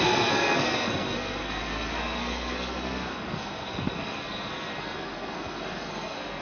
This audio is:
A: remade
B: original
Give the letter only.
A